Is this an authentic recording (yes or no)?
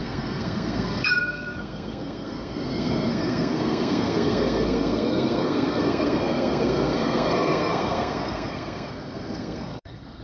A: no